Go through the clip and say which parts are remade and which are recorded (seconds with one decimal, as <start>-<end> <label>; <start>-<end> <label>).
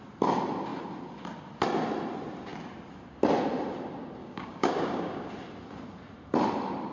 0.0-4.2 recorded; 4.2-5.3 remade; 5.3-6.9 recorded